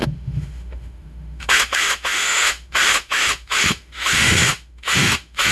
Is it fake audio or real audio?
fake